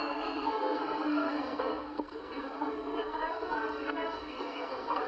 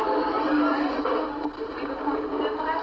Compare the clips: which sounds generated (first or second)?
first